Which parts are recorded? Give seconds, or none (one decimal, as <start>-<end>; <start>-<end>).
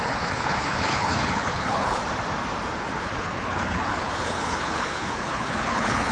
2.0-3.0